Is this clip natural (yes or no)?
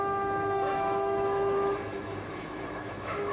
no